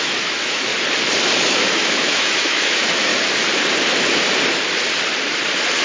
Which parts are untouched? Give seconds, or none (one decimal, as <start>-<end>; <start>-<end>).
0.7-1.4; 3.1-5.8